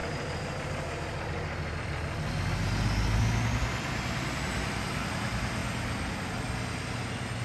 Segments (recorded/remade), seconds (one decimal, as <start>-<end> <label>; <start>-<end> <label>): 0.0-7.4 recorded